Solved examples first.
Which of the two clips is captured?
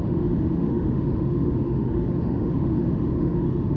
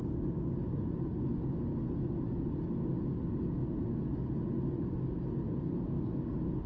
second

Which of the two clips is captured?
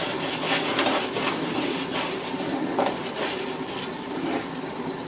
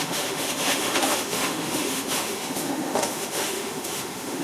first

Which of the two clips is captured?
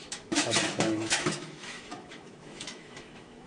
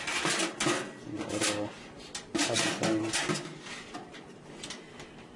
second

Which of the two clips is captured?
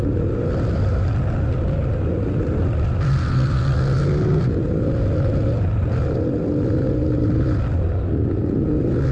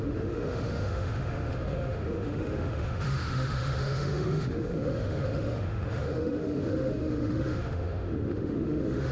first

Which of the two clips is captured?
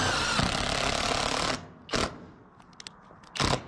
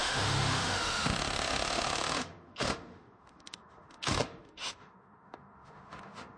first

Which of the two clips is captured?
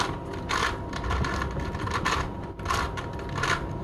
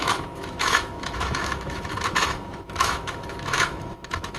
first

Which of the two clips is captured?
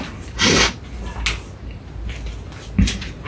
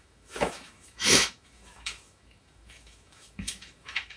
first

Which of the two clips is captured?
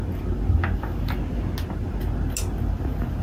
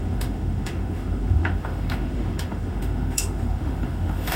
first